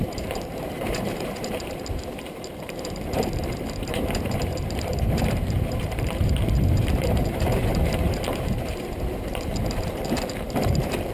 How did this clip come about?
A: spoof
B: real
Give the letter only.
A